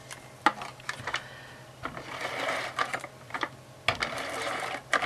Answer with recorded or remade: recorded